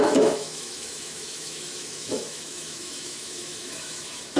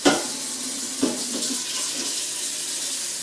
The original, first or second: second